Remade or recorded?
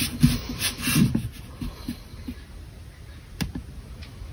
recorded